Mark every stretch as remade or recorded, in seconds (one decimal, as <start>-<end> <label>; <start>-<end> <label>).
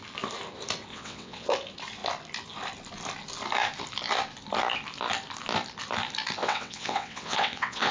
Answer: 0.0-0.9 recorded; 0.9-1.5 remade; 1.5-6.4 recorded; 6.4-7.9 remade